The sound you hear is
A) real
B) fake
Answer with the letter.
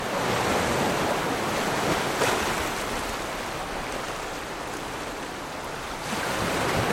A